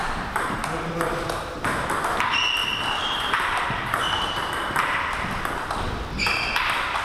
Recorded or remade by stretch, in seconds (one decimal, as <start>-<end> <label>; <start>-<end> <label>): 0.0-0.9 remade; 0.9-2.6 recorded; 2.6-4.5 remade; 4.5-7.0 recorded